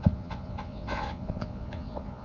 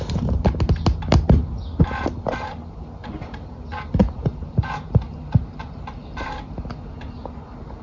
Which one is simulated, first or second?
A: first